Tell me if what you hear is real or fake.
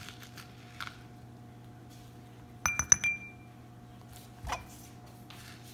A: real